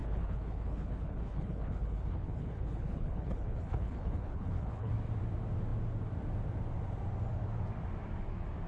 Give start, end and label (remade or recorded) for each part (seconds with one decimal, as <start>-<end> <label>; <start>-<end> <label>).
0.0-4.9 remade; 4.9-8.7 recorded